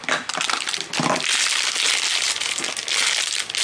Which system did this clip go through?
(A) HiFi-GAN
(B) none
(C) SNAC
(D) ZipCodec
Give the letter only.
B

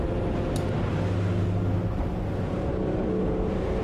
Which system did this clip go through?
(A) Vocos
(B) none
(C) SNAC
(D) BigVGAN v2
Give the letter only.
B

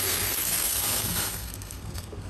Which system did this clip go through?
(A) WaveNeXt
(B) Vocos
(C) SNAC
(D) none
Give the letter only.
C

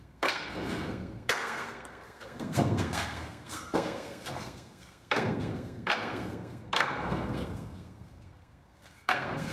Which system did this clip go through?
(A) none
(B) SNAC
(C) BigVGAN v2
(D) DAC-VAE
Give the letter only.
B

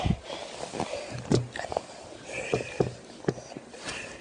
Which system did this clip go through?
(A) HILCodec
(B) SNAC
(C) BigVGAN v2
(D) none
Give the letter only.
D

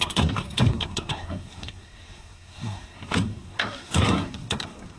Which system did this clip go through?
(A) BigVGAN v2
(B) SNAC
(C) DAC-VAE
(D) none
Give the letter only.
B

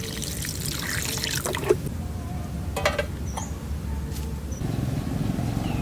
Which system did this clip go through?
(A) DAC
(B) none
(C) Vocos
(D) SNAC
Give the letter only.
B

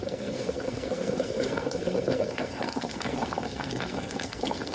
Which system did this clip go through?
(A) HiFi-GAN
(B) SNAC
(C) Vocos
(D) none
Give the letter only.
B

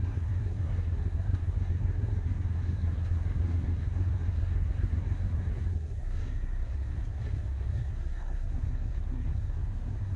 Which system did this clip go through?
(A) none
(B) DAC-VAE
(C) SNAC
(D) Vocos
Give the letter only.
C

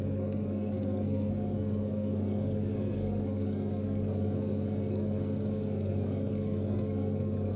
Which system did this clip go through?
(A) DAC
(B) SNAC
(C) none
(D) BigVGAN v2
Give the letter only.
B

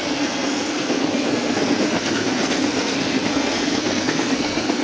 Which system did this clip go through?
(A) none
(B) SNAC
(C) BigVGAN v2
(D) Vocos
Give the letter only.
B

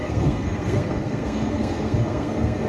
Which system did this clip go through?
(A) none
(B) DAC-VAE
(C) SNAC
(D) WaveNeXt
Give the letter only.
C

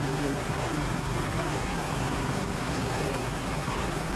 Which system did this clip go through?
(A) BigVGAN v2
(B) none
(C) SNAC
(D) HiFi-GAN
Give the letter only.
C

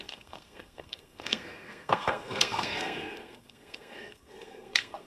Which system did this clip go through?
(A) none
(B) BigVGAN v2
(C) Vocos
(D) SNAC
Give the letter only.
D